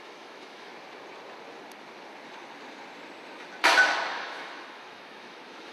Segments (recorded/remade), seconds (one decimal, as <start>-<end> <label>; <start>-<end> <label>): 0.0-0.7 remade; 0.7-4.1 recorded; 4.1-5.7 remade